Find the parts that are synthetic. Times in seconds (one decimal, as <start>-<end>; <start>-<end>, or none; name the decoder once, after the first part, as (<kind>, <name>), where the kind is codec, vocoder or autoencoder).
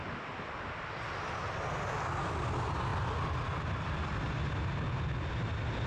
2.9-4.5 (vocoder, BigVGAN v2)